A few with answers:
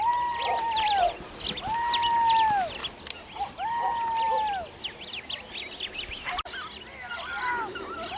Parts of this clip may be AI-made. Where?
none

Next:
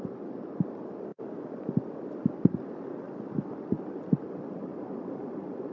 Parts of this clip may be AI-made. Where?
none